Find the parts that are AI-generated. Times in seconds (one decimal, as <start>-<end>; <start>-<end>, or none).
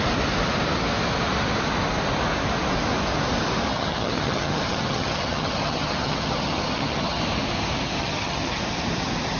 3.7-7.2; 8.0-8.6